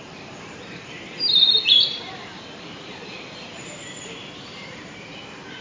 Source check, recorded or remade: remade